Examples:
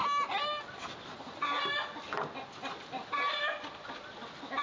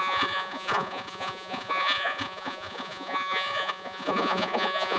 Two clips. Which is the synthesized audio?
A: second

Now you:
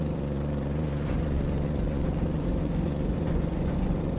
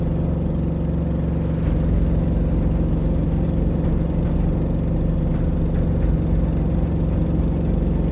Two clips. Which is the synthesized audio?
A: first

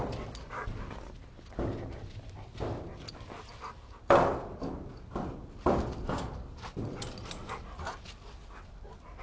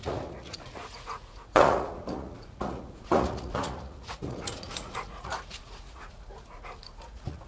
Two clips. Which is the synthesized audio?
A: second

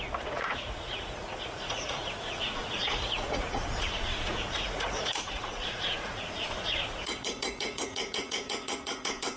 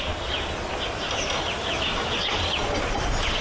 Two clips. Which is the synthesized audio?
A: first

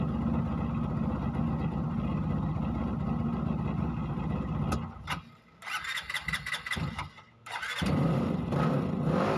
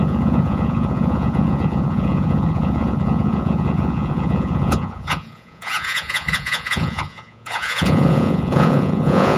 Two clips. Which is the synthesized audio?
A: second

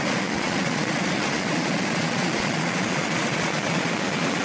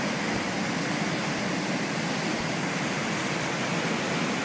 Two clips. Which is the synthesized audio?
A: first